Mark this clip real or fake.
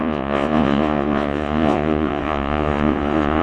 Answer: fake